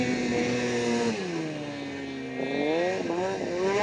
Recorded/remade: recorded